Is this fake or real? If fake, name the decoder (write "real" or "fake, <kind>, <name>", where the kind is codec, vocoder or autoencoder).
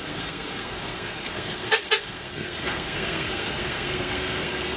fake, codec, SNAC